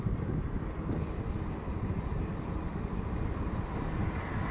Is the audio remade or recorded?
recorded